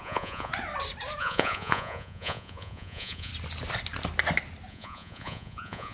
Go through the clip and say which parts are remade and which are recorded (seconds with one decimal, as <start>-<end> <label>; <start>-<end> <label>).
0.0-0.5 remade; 0.5-1.2 recorded; 1.2-3.3 remade; 3.3-4.7 recorded; 4.7-5.9 remade